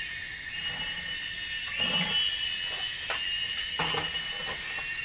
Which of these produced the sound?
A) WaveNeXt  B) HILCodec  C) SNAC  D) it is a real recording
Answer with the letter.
D